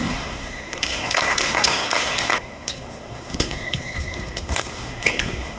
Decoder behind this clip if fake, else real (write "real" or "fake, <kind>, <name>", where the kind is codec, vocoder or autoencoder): fake, codec, SNAC